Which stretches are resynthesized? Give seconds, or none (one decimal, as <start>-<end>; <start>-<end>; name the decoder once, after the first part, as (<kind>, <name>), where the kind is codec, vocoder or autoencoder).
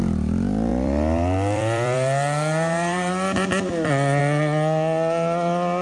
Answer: 0.7-4.2 (vocoder, BigVGAN v2)